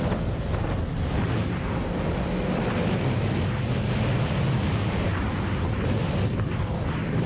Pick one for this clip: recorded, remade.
recorded